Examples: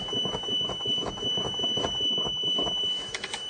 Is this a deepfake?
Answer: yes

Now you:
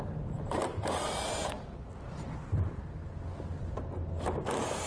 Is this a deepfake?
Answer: no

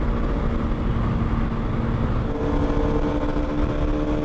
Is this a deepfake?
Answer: no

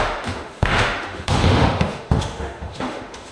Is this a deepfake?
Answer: yes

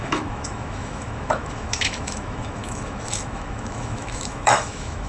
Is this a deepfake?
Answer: yes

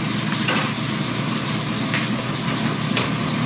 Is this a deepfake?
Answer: no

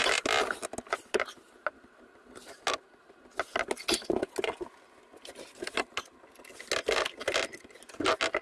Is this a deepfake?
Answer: no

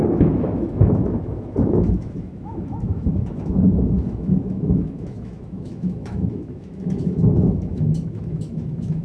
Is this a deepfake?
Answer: yes